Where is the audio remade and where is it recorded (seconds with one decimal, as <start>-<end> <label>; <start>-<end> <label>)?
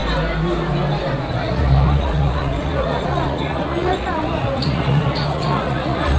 0.0-1.3 recorded; 1.3-6.2 remade